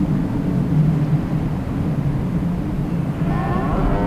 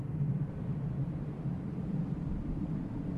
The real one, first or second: first